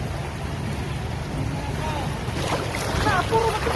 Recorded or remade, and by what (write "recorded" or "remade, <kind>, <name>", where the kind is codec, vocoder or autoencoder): recorded